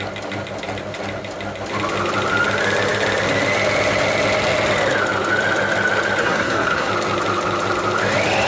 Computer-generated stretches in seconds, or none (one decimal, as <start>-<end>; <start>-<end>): 6.2-6.9